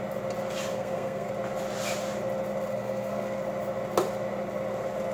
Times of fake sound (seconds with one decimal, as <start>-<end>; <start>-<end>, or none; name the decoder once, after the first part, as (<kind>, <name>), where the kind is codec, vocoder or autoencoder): 0.7-1.3 (codec, SNAC); 2.7-3.4